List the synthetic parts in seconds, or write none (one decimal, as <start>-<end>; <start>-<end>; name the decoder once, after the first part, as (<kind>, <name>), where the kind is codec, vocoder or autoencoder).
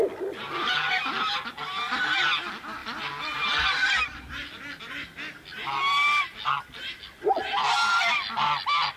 none